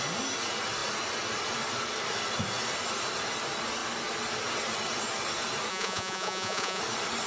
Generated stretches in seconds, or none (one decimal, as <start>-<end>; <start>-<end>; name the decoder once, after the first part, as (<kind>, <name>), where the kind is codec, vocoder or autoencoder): 5.7-6.8 (vocoder, Vocos)